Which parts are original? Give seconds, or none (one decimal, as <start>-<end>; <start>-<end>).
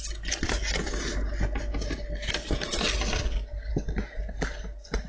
0.0-5.1